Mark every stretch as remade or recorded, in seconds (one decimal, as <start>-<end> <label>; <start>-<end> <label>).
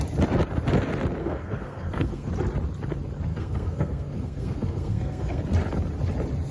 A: 0.0-1.2 recorded; 1.2-2.3 remade; 2.3-3.3 recorded; 3.3-5.4 remade; 5.4-6.5 recorded